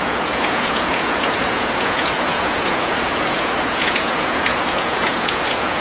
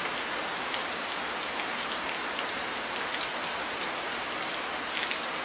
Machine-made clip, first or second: first